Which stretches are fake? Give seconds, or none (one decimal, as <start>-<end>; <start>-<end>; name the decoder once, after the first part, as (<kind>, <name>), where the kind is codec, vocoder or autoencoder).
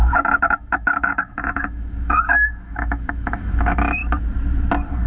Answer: 0.0-4.0 (autoencoder, DAC-VAE)